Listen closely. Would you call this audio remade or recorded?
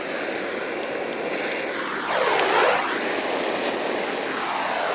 recorded